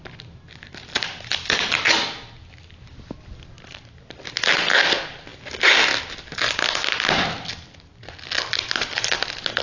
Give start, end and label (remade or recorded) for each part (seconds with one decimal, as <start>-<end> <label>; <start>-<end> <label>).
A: 0.0-9.6 recorded